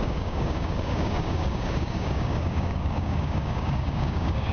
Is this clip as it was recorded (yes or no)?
no